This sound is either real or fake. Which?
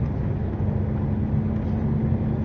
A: real